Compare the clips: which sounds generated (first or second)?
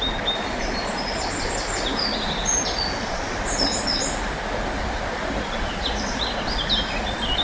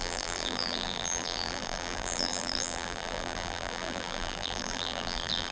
second